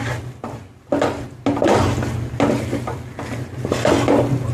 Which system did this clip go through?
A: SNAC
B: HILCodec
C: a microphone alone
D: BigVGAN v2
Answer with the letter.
C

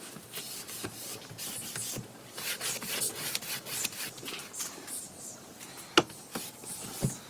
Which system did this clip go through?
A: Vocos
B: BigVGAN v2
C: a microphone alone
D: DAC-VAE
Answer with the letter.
C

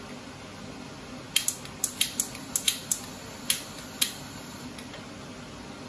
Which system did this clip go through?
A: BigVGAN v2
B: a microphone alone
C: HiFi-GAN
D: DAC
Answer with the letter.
B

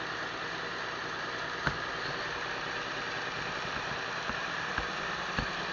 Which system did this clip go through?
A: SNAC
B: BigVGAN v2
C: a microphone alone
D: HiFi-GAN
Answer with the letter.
B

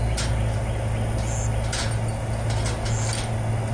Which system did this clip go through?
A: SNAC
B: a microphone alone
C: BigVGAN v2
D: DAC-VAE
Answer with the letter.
B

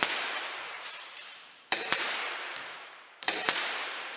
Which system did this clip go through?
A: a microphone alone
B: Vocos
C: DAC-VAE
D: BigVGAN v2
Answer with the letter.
D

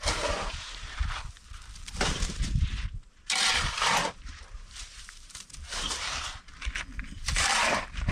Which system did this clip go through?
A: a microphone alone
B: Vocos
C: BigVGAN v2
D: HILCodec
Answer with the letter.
C